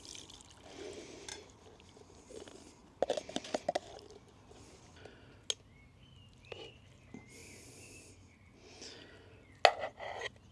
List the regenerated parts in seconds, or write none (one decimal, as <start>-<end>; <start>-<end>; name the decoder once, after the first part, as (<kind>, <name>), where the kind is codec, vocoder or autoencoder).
7.4-8.1 (vocoder, BigVGAN v2)